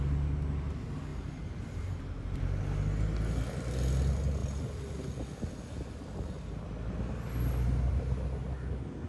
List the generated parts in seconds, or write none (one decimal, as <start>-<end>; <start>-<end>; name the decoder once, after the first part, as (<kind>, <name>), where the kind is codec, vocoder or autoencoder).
1.1-2.6 (vocoder, BigVGAN v2)